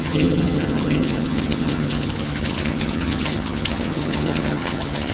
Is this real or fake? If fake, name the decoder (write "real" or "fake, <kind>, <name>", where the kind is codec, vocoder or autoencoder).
fake, vocoder, HiFi-GAN